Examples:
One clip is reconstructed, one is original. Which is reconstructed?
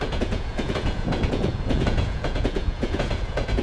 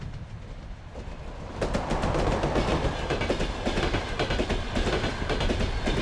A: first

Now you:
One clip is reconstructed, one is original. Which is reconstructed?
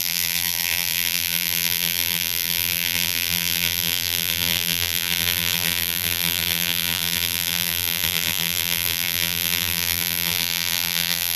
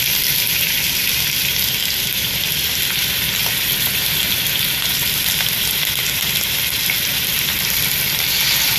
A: first